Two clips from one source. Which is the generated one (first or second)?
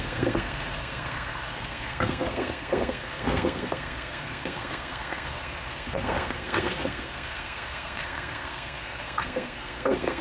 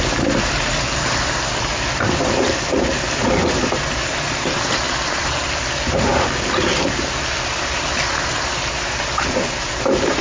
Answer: first